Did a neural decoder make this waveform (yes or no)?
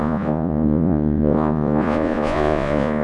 yes